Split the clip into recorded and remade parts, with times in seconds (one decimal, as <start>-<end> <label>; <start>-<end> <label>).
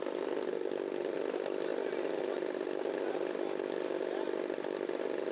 0.0-5.3 recorded